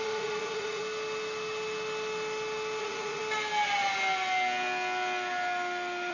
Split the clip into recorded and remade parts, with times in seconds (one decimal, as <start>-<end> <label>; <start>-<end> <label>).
0.0-0.8 remade; 0.8-2.8 recorded; 2.8-3.2 remade; 3.2-6.1 recorded